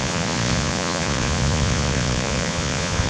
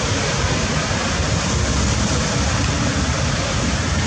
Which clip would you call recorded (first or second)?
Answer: second